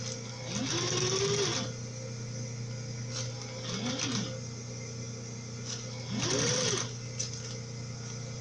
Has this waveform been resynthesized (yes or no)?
no